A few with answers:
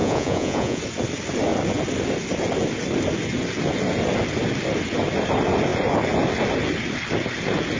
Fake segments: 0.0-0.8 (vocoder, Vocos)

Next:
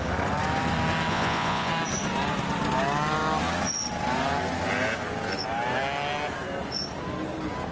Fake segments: 1.1-1.7 (vocoder, Vocos)

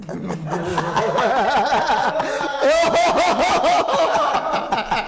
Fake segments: 0.7-1.3 (autoencoder, DAC-VAE); 2.5-4.3

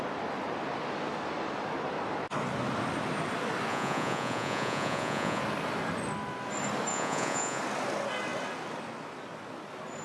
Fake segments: 3.7-5.4 (vocoder, Vocos); 6.9-7.6